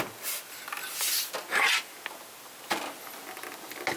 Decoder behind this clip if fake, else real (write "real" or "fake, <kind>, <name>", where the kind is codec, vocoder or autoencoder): real